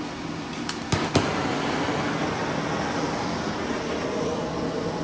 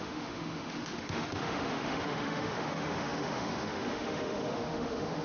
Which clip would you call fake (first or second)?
second